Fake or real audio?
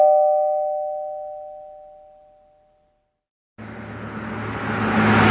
real